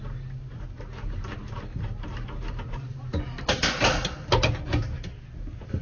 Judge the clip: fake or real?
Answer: real